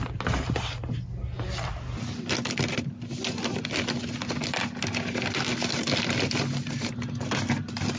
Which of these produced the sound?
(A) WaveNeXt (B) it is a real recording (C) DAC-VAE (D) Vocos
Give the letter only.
B